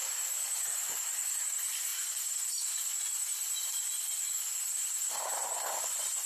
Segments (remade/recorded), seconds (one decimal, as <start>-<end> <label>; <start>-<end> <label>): 0.0-1.9 remade; 1.9-5.7 recorded; 5.7-6.3 remade